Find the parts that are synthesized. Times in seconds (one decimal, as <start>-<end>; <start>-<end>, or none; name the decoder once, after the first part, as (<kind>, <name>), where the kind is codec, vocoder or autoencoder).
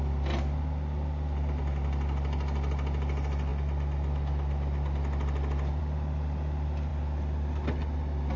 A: none